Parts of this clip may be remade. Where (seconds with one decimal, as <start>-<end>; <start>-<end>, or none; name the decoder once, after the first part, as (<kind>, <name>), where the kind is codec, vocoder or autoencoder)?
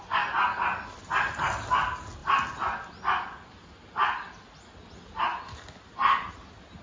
none